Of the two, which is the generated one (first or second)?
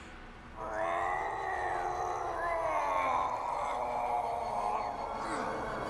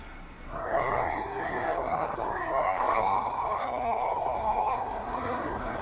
second